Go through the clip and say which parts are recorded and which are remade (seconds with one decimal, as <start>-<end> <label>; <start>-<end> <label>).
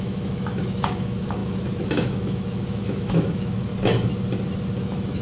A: 0.0-3.7 remade; 3.7-4.8 recorded; 4.8-5.2 remade